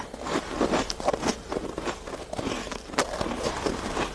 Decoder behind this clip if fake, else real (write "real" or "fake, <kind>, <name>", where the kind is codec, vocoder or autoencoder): real